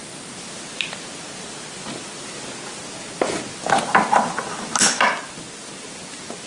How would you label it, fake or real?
real